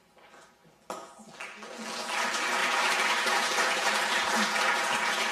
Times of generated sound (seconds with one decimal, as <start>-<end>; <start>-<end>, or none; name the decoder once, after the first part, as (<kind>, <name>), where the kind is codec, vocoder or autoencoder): 2.6-4.3 (vocoder, BigVGAN v2)